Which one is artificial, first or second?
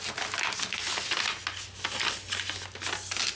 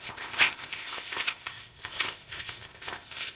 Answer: second